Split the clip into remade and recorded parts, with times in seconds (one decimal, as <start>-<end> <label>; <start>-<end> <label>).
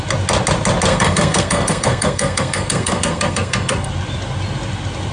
0.0-0.9 recorded; 0.9-3.9 remade; 3.9-5.1 recorded